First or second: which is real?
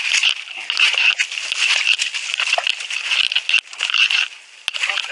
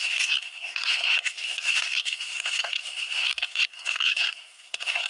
first